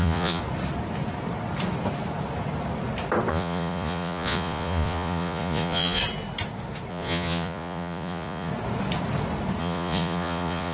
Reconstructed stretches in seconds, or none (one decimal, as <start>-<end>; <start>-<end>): 0.0-0.4; 3.3-6.0; 6.9-8.5; 9.6-10.7